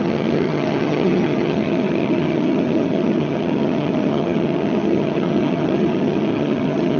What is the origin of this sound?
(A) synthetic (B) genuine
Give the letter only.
A